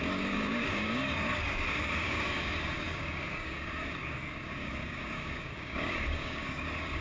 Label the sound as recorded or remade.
remade